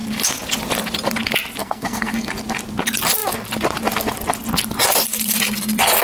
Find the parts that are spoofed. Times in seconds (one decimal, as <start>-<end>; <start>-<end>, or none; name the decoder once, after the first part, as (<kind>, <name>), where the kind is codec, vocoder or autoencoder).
1.6-2.3 (codec, SNAC)